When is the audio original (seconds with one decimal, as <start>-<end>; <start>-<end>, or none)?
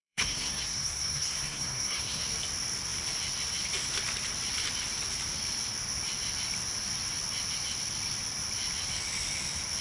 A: 2.2-9.8